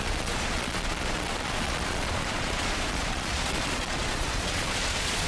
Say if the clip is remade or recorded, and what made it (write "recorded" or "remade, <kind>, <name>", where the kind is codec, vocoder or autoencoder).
remade, vocoder, Vocos